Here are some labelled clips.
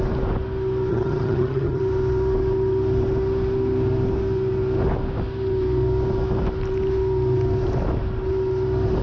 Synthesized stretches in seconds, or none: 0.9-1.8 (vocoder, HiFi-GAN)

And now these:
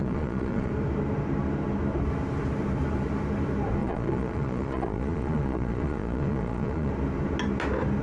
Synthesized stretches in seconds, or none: 0.0-0.7 (vocoder, Vocos); 3.8-6.9